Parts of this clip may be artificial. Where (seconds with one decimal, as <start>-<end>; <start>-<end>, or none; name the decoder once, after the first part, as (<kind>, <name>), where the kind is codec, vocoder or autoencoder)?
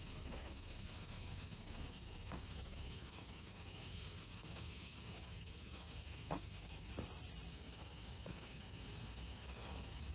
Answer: 0.0-6.9 (codec, SNAC); 7.5-10.1